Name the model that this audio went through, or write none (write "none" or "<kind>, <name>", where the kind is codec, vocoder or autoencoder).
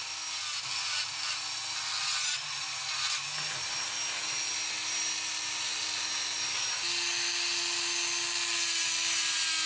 none